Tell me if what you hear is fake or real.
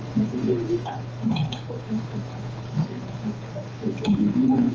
fake